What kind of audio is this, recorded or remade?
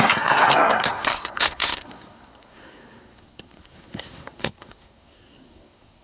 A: remade